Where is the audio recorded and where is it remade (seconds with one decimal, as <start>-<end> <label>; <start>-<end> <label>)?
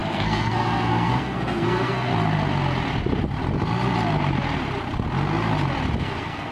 0.0-2.1 remade; 2.1-6.0 recorded; 6.0-6.5 remade